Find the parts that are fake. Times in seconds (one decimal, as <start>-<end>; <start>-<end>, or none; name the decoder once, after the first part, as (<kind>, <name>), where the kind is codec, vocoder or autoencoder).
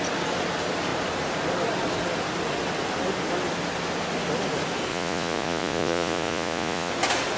4.9-6.9 (vocoder, Vocos)